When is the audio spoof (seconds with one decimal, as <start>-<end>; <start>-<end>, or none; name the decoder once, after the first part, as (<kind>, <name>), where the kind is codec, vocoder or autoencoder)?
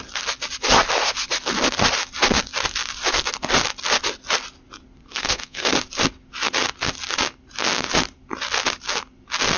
5.0-5.7 (codec, SNAC)